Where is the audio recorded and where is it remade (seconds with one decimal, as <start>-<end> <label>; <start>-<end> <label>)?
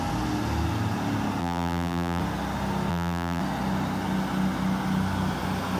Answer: 0.0-1.4 recorded; 1.4-2.2 remade; 2.2-2.9 recorded; 2.9-3.4 remade; 3.4-5.8 recorded